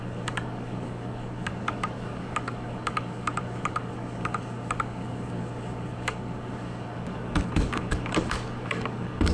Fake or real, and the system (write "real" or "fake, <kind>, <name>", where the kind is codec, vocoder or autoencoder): fake, codec, DAC